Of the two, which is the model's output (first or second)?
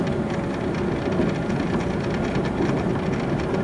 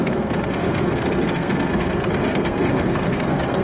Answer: second